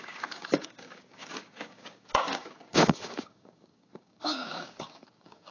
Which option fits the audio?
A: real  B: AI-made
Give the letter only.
B